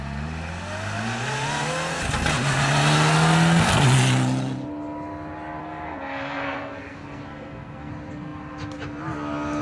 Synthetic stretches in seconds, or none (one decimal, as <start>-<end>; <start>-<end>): 5.6-7.9